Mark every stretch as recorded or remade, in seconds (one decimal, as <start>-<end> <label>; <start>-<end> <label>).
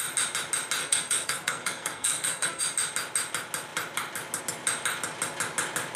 0.0-0.8 recorded; 0.8-2.6 remade; 2.6-6.0 recorded